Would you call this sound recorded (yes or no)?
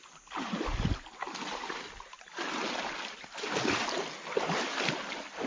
yes